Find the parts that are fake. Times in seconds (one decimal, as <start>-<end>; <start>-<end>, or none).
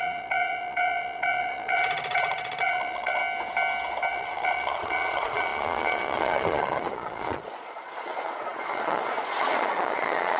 0.0-3.2; 4.1-10.4